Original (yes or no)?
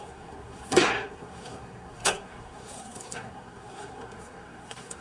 no